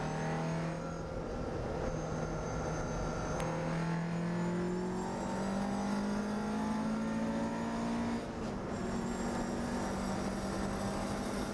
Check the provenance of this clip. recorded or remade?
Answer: recorded